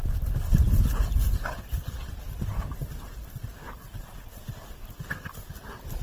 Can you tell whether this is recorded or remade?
recorded